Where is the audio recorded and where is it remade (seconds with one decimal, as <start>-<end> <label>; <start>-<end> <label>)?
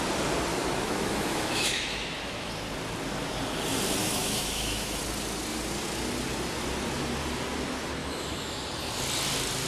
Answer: 0.0-0.5 recorded; 0.5-2.5 remade; 2.5-4.0 recorded; 4.0-5.0 remade; 5.0-8.0 recorded; 8.0-8.6 remade; 8.6-9.7 recorded